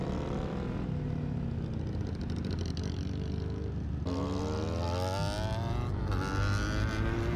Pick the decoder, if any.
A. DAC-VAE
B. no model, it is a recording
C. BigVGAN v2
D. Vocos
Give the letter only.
B